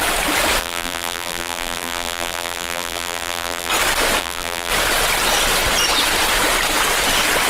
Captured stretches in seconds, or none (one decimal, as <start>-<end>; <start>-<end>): 0.0-0.6; 3.7-4.2; 4.7-7.5